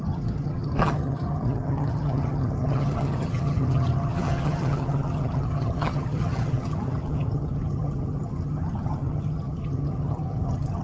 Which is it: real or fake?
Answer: fake